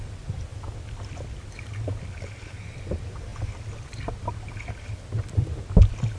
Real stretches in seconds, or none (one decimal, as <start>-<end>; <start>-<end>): 0.0-6.2